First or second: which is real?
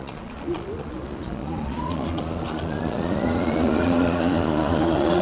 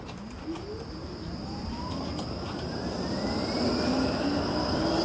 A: second